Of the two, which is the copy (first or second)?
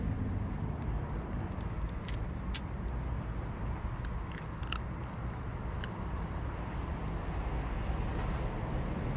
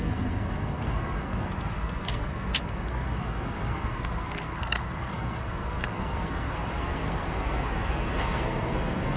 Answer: second